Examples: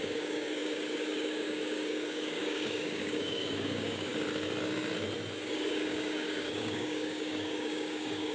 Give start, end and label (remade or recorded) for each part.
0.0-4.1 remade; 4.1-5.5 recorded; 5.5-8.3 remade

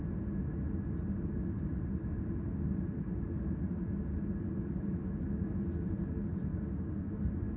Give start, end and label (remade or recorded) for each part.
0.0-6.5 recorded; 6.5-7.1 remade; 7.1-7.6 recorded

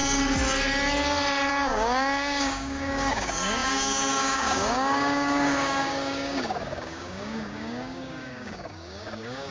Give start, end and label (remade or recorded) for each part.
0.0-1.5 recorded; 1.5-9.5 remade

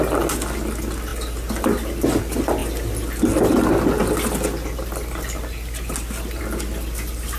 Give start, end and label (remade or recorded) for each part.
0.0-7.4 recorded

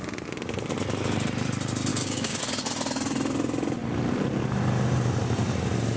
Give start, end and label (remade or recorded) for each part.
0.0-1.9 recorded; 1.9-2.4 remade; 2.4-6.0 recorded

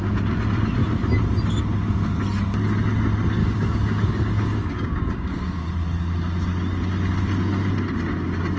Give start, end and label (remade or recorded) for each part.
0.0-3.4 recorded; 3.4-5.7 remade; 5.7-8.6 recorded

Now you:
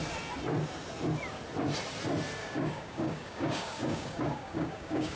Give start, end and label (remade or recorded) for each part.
0.0-2.4 recorded; 2.4-5.2 remade